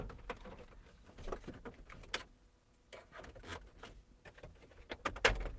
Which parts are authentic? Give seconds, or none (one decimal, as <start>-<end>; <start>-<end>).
0.0-5.6